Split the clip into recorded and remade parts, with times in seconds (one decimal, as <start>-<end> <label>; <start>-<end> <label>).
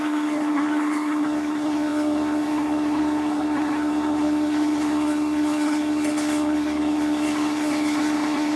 0.0-8.6 remade